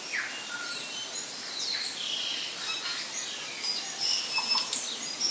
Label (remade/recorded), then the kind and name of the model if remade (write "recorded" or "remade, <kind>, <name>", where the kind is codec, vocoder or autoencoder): recorded